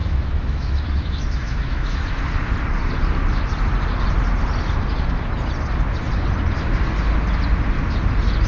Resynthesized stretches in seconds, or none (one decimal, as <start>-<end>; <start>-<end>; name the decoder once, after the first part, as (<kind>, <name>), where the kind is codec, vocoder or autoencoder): 0.0-2.2 (autoencoder, DAC-VAE)